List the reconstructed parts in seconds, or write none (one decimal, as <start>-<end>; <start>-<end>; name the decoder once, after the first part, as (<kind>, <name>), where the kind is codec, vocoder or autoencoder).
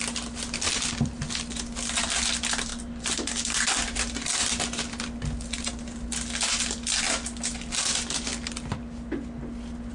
none